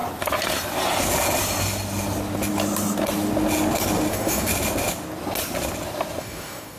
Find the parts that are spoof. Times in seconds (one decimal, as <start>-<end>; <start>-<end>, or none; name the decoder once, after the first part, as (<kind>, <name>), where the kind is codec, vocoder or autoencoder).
4.1-4.5 (codec, DAC); 6.2-6.8